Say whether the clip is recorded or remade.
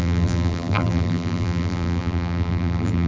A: remade